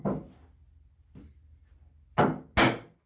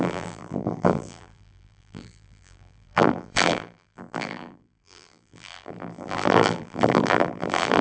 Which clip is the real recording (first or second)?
first